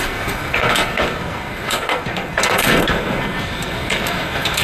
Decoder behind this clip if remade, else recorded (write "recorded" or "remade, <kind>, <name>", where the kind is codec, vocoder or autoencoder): remade, codec, SNAC